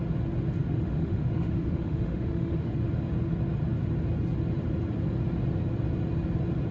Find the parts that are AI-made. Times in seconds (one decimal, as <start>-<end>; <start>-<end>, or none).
0.6-2.7